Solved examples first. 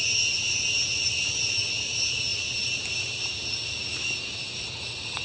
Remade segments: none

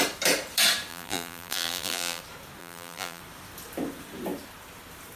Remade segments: 0.9-2.2 (vocoder, BigVGAN v2); 2.6-3.2

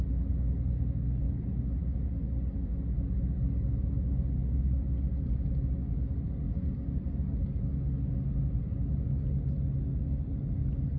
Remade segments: none

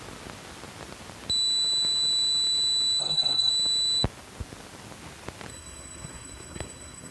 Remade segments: 3.0-3.5 (codec, SNAC); 5.5-7.1

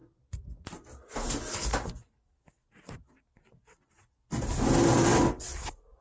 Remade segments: none

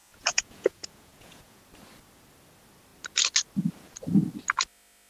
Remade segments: 0.0-1.6 (vocoder, Vocos)